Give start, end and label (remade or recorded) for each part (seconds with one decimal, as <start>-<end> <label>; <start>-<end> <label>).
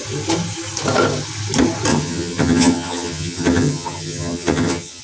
0.0-1.9 recorded; 1.9-5.0 remade